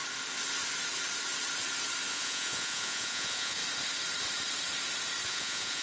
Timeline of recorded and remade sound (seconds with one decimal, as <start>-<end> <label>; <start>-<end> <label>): 0.0-2.1 recorded; 2.1-3.6 remade; 3.6-5.3 recorded; 5.3-5.8 remade